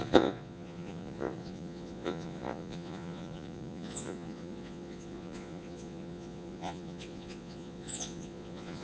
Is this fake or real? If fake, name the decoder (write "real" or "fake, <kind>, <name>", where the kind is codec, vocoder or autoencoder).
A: fake, vocoder, Vocos